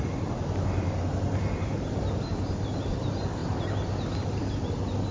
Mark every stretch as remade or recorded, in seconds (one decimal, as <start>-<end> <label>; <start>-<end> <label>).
0.0-5.1 recorded